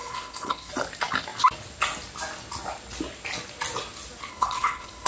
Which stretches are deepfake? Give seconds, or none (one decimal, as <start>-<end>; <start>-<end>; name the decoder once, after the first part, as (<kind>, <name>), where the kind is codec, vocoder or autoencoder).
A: 0.0-0.7 (codec, HILCodec); 4.3-5.1